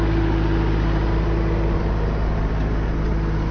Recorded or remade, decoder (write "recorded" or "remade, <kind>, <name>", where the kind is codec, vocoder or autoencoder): recorded